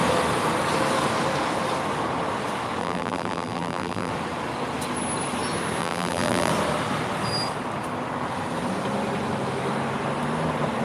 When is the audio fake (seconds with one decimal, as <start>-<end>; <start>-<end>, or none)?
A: 2.8-4.1; 5.8-6.5